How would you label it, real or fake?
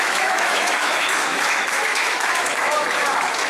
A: fake